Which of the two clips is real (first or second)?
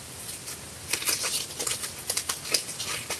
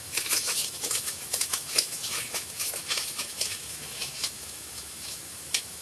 first